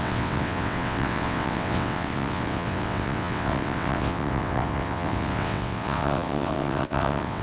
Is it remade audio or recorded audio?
remade